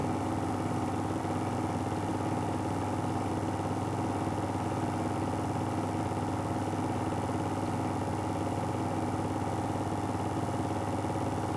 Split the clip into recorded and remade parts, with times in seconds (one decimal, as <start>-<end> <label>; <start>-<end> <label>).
0.0-1.2 remade; 1.2-2.1 recorded; 2.1-3.3 remade; 3.3-11.6 recorded